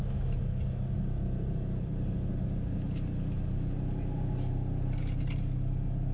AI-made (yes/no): no